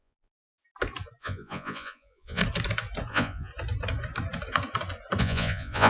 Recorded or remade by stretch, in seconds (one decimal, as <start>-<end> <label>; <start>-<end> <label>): 0.0-0.4 remade; 0.4-1.2 recorded; 1.2-2.4 remade; 2.4-3.1 recorded; 3.1-3.5 remade; 3.5-5.2 recorded; 5.2-5.9 remade

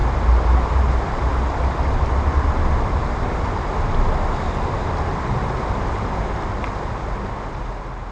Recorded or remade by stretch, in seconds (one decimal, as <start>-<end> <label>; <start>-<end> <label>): 0.0-8.1 recorded

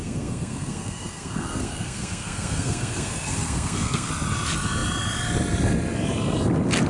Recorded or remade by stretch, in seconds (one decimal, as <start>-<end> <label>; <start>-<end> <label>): 0.0-4.1 remade; 4.1-6.9 recorded

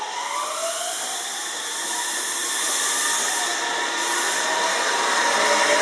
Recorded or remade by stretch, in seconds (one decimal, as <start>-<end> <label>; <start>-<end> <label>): 0.0-5.8 recorded

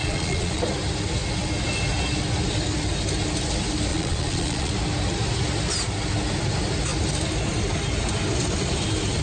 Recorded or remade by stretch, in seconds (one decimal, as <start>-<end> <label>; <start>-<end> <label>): 0.0-0.6 remade; 0.6-3.9 recorded; 3.9-4.7 remade; 4.7-9.2 recorded